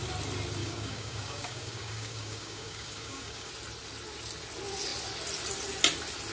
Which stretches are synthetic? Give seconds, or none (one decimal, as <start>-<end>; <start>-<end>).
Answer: 0.6-3.5